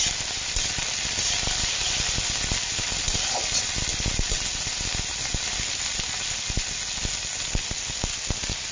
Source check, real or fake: real